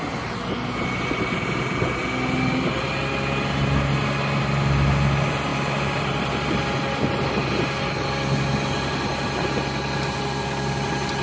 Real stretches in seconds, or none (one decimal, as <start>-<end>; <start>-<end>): 0.0-11.2